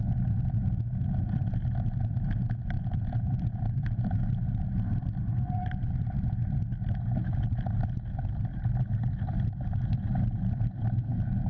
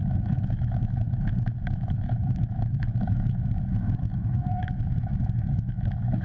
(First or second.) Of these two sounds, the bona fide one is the first